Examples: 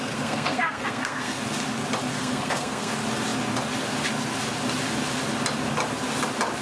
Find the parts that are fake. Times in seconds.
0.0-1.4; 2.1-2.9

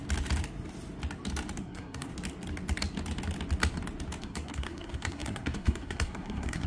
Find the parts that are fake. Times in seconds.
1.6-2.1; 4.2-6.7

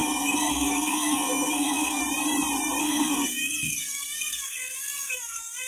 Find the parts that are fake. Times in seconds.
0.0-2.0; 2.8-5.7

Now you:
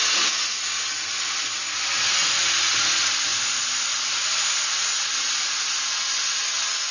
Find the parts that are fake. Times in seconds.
none

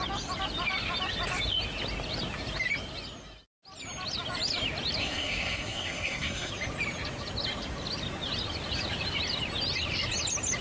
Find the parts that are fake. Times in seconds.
5.0-6.5

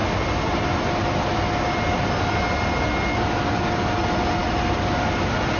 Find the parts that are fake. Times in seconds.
none